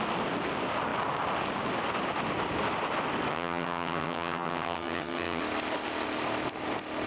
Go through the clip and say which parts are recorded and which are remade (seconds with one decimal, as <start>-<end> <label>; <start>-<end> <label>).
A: 0.0-3.3 recorded; 3.3-5.4 remade; 5.4-7.1 recorded